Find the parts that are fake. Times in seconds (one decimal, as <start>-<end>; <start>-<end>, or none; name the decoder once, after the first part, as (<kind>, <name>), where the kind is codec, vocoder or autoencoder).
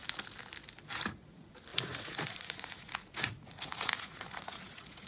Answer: 1.1-5.1 (vocoder, Vocos)